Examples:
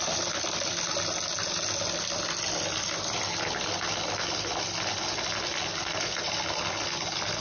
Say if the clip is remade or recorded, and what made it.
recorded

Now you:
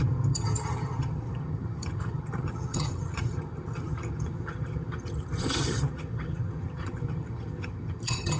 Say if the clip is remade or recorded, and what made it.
remade, vocoder, HiFi-GAN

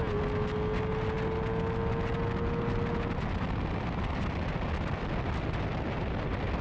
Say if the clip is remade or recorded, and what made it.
recorded